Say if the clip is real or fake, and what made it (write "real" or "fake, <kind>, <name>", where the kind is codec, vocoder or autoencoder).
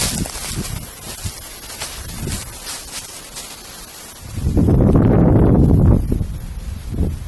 real